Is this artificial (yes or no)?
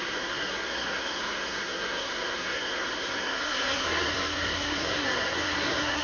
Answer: yes